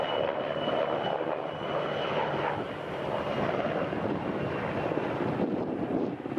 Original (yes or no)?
yes